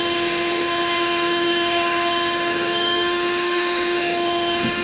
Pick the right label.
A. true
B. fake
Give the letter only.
B